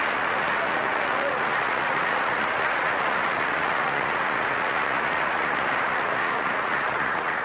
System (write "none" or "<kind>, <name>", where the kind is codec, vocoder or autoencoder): vocoder, Vocos